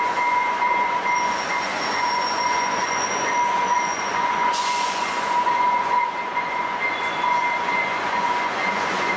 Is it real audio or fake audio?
fake